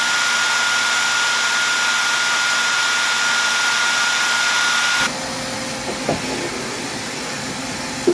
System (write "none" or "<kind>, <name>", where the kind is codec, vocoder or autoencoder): none